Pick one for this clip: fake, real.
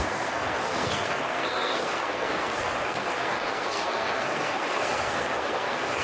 fake